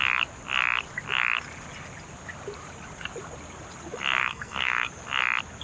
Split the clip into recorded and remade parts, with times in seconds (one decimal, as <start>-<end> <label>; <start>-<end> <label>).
0.0-4.2 recorded; 4.2-4.9 remade; 4.9-5.6 recorded